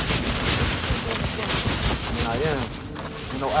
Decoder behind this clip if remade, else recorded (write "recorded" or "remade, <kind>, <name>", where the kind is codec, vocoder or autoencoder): recorded